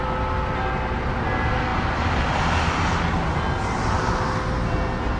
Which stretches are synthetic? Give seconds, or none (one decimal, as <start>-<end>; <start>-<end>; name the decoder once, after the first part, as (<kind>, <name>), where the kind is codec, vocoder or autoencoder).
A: none